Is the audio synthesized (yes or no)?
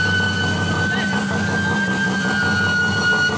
no